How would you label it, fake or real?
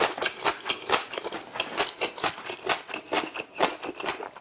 real